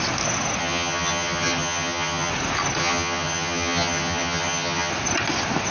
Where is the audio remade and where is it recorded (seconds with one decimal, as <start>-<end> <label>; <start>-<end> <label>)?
0.0-0.6 recorded; 0.6-2.3 remade; 2.3-2.8 recorded; 2.8-4.9 remade; 4.9-5.7 recorded